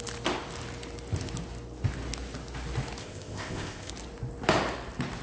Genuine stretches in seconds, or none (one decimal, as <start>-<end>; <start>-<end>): 0.0-3.0; 3.9-5.2

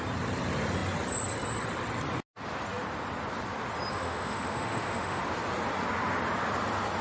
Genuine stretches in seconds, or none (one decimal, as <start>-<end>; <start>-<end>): 0.0-3.9; 5.2-7.0

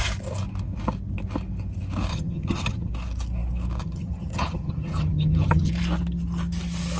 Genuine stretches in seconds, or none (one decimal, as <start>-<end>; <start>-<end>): 0.0-2.1; 2.9-3.8; 5.7-7.0

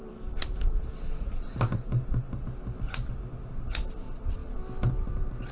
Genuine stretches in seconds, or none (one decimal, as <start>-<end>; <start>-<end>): 0.9-4.0

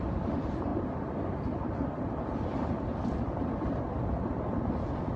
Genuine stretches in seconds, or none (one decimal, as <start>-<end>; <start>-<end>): 0.0-5.2